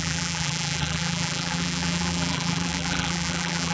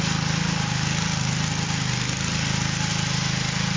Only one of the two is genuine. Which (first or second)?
second